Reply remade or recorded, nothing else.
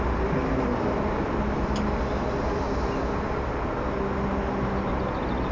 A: recorded